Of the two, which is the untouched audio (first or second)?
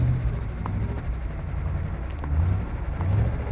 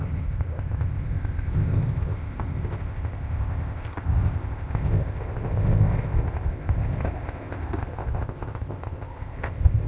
first